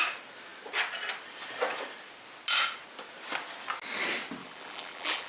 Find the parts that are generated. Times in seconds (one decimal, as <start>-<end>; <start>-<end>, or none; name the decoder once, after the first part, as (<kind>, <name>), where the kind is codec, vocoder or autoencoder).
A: 4.4-5.3 (vocoder, BigVGAN v2)